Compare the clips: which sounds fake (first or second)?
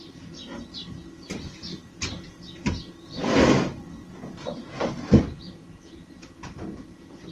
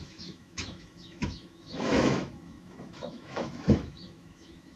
second